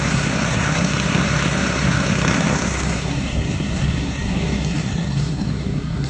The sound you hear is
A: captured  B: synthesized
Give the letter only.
B